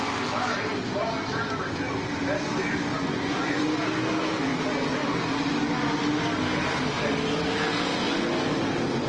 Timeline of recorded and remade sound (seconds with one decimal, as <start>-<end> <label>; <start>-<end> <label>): 0.0-2.9 recorded; 2.9-3.6 remade; 3.6-9.1 recorded